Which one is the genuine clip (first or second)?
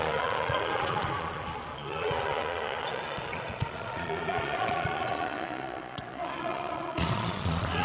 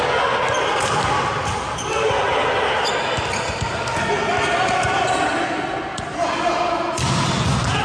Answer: second